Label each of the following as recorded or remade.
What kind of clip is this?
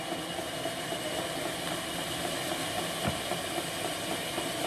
recorded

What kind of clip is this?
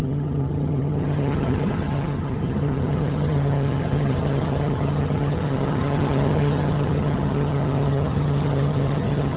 remade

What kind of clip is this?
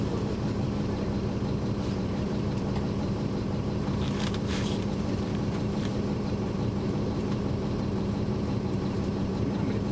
remade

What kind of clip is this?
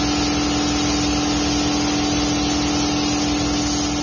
recorded